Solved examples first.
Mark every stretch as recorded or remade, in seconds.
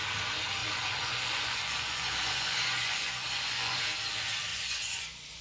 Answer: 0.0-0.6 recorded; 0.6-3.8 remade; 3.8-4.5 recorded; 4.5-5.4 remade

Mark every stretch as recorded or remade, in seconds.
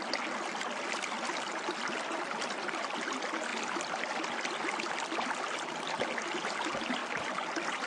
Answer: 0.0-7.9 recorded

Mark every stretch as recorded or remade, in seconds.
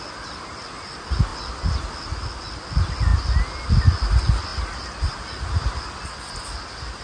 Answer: 0.0-7.0 recorded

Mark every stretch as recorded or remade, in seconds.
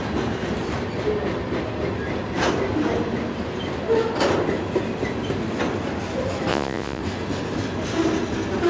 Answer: 0.0-6.5 recorded; 6.5-7.0 remade; 7.0-8.7 recorded